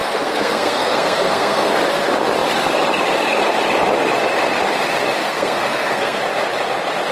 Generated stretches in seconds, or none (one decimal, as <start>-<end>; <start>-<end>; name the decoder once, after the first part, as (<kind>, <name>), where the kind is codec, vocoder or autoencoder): 0.0-1.7 (codec, SNAC); 5.2-6.2